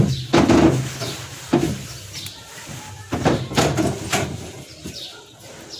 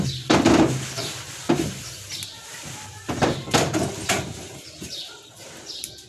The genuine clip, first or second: first